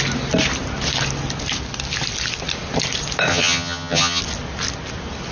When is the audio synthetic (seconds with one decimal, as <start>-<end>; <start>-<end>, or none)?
3.3-4.2